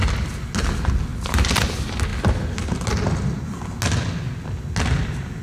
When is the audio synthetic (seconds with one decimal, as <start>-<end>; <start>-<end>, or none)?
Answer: none